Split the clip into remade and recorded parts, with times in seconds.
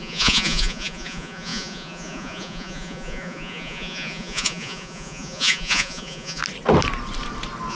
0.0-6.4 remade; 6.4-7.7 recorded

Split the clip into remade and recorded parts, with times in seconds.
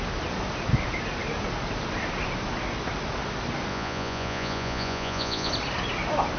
0.0-3.7 recorded; 3.7-5.5 remade; 5.5-6.4 recorded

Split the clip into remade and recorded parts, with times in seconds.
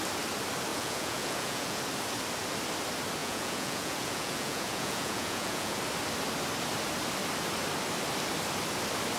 0.0-0.7 recorded; 0.7-1.8 remade; 1.8-3.2 recorded; 3.2-5.8 remade; 5.8-9.2 recorded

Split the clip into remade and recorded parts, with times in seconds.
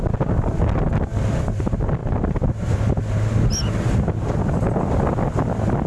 0.0-5.9 recorded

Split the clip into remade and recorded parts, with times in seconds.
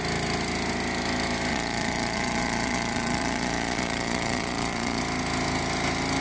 0.0-1.5 recorded; 1.5-5.0 remade; 5.0-6.2 recorded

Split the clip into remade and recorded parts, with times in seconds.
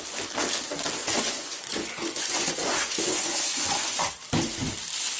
0.0-1.0 recorded; 1.0-4.1 remade; 4.1-5.2 recorded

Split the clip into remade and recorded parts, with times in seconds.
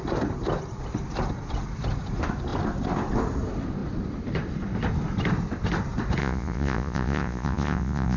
0.0-6.2 recorded; 6.2-8.2 remade